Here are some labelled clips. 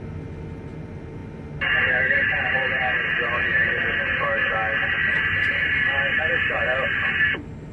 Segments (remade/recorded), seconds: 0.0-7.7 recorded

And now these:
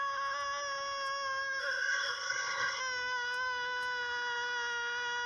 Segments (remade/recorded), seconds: 0.0-1.6 recorded; 1.6-2.8 remade; 2.8-5.3 recorded

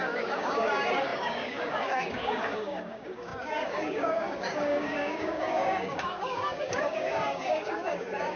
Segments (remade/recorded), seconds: 0.0-8.4 remade

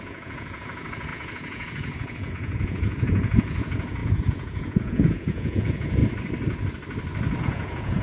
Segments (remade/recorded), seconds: 0.0-6.0 remade; 6.0-7.4 recorded; 7.4-8.0 remade

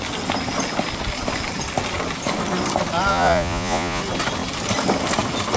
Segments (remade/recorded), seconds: 0.0-3.1 recorded; 3.1-4.0 remade; 4.0-5.6 recorded

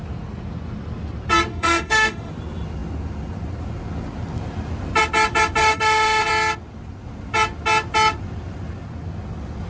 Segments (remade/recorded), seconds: 0.0-1.5 recorded; 1.5-2.3 remade; 2.3-5.6 recorded; 5.6-6.2 remade; 6.2-9.7 recorded

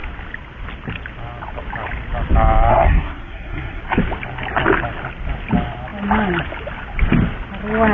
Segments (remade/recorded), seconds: 0.0-2.7 recorded; 2.7-3.8 remade; 3.8-7.9 recorded

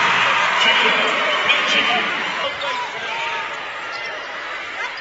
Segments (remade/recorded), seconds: 0.0-0.7 recorded; 0.7-2.8 remade; 2.8-5.0 recorded